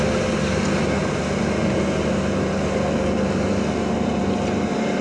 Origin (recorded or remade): recorded